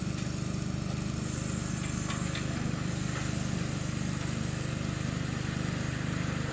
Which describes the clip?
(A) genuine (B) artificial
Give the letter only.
A